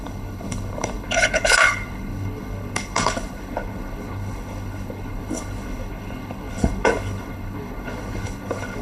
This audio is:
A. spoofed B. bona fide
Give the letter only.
A